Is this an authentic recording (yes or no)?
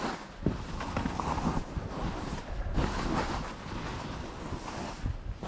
yes